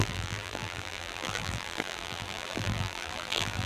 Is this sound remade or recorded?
remade